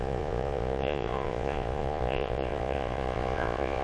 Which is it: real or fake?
fake